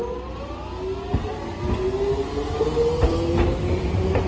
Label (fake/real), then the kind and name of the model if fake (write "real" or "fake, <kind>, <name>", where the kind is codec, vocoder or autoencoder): real